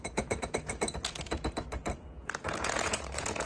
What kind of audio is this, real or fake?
fake